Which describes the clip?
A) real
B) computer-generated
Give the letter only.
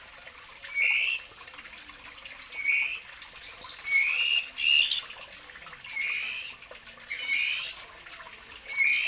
A